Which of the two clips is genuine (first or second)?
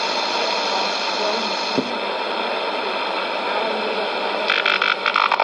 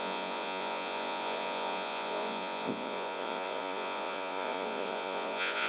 first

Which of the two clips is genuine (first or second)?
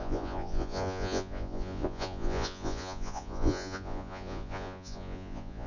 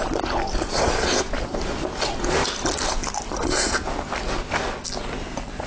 second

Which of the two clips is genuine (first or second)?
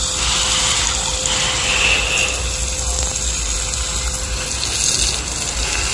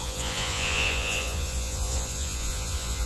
first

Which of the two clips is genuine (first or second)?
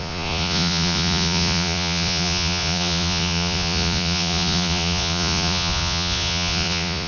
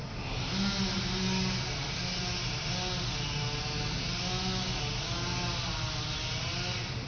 second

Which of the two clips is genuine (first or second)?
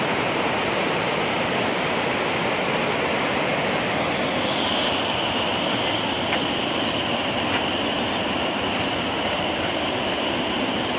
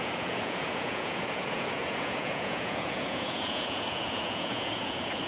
first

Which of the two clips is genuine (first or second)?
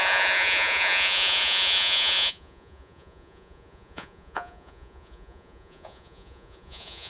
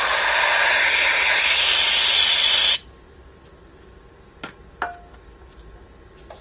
second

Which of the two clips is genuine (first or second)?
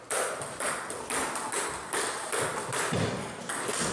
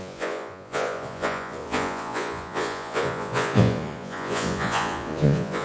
first